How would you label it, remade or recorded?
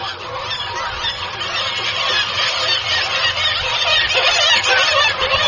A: recorded